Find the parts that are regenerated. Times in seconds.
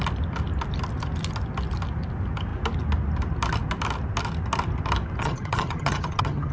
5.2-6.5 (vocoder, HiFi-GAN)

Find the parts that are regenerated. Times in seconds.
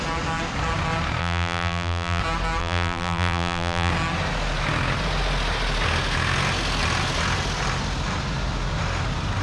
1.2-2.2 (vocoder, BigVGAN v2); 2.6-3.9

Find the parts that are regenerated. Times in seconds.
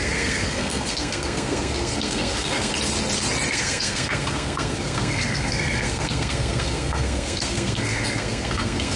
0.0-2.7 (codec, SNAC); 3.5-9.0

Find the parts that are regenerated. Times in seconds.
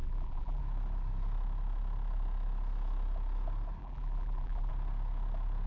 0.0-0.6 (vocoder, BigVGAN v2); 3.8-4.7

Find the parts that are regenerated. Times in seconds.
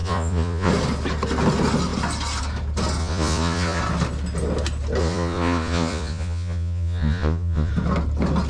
0.0-0.7 (vocoder, Vocos); 3.0-3.8; 5.0-7.7